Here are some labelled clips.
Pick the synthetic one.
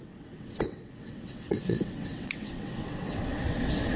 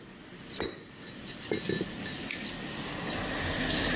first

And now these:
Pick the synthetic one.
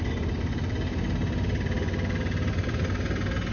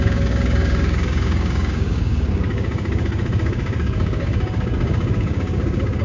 second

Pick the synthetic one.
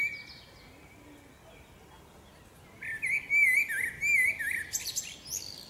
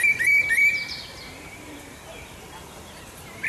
second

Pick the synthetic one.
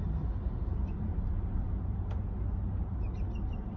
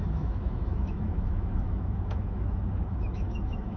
second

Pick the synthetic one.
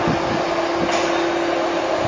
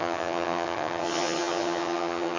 second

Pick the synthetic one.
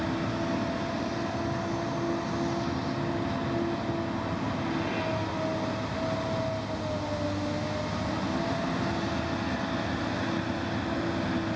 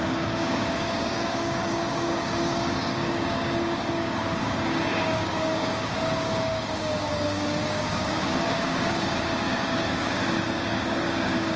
second